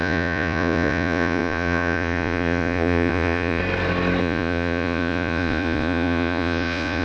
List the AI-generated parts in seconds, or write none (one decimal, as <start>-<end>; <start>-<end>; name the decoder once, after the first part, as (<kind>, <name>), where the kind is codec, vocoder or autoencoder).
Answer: 0.0-3.6 (vocoder, Vocos); 4.2-7.0